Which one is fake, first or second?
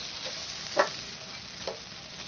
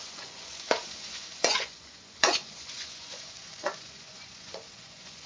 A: second